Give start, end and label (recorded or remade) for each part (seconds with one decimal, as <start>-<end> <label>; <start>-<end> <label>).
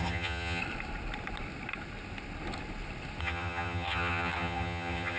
0.0-0.6 remade; 0.6-3.2 recorded; 3.2-5.2 remade